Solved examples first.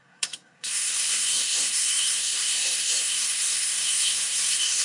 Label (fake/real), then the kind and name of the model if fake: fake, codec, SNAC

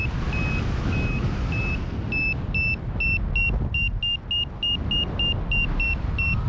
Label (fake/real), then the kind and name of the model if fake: real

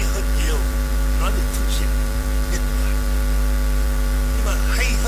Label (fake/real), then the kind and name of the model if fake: fake, vocoder, BigVGAN v2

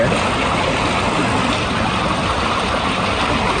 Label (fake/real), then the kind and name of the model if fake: real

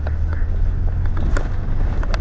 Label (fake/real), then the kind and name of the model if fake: real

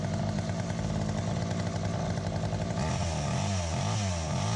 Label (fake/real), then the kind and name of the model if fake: real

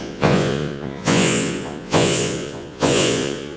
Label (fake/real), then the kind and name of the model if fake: fake, vocoder, Vocos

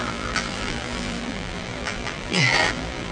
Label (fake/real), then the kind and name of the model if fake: fake, vocoder, BigVGAN v2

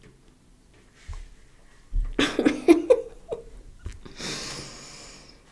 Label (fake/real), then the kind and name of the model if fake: real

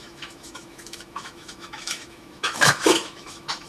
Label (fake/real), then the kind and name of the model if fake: fake, autoencoder, DAC-VAE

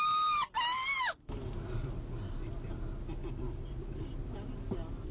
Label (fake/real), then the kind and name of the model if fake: real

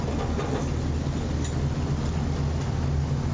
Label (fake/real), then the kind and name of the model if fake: real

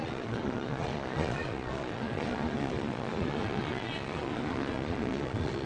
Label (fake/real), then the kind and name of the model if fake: fake, vocoder, Vocos